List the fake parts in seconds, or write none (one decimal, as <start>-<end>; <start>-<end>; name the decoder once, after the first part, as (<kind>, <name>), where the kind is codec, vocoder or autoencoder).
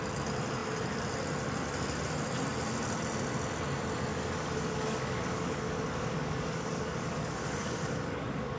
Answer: 4.1-8.6 (codec, DAC)